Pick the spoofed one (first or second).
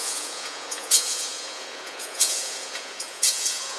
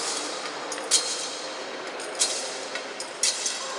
first